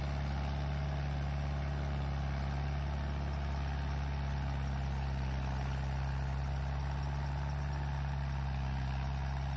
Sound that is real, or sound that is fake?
real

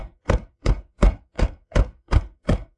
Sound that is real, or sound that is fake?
fake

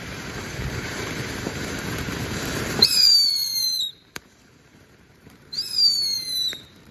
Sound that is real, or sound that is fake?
fake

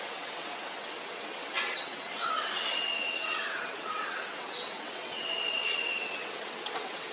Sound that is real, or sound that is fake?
fake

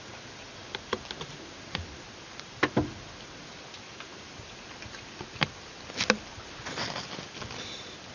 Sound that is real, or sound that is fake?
real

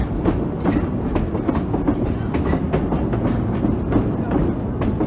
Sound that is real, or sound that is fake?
real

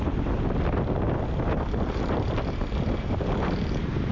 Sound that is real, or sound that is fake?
real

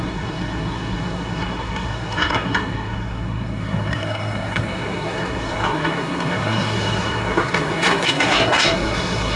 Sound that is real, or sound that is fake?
fake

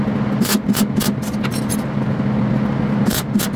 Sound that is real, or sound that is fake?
real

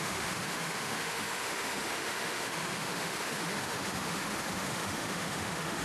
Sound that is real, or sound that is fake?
fake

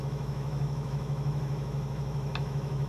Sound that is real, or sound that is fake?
fake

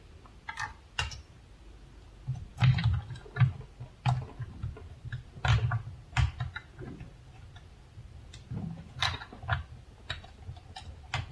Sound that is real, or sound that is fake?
real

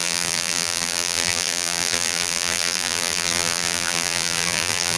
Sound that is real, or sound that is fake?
fake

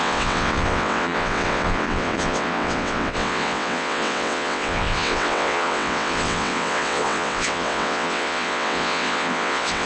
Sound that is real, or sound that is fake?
fake